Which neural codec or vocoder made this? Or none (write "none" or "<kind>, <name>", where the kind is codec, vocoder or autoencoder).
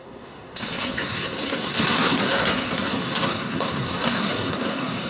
codec, SNAC